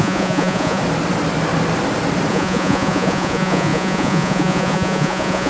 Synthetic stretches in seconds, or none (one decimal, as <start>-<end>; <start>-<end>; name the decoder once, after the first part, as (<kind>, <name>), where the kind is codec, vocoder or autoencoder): 0.0-0.8 (vocoder, Vocos); 2.3-5.5